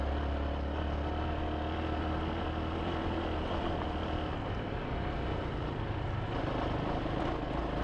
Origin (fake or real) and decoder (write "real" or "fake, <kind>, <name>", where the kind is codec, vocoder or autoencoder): real